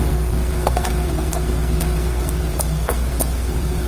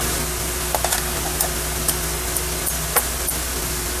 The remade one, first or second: first